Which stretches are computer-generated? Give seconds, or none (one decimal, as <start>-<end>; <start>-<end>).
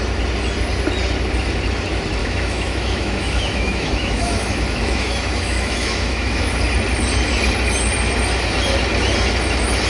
2.2-6.5